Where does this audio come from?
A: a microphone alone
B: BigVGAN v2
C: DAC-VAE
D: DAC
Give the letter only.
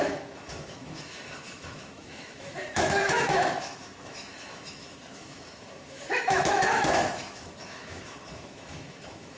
C